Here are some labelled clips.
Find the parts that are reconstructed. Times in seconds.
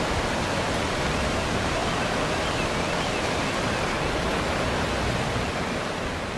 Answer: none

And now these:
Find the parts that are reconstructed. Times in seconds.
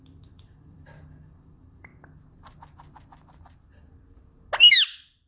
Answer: 0.0-1.9